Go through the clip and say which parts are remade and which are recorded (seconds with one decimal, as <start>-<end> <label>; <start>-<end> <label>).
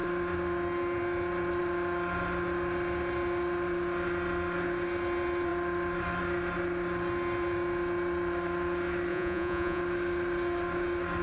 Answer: 0.0-9.1 recorded; 9.1-9.8 remade; 9.8-11.2 recorded